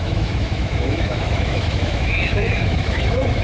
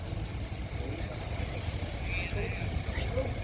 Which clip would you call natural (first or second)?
second